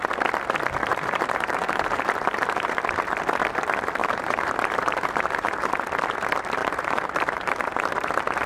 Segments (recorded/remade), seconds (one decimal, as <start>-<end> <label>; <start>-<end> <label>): 0.0-0.9 recorded; 0.9-2.8 remade; 2.8-4.0 recorded; 4.0-5.7 remade; 5.7-6.6 recorded; 6.6-8.1 remade; 8.1-8.5 recorded